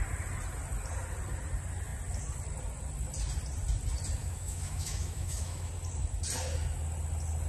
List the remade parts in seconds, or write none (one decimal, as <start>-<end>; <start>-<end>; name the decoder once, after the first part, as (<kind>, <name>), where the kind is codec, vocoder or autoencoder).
4.2-5.7 (autoencoder, DAC-VAE)

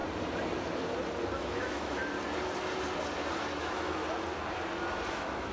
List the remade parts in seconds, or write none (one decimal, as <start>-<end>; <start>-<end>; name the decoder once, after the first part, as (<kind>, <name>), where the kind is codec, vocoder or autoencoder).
1.4-2.0 (autoencoder, DAC-VAE); 3.6-4.0; 5.1-5.5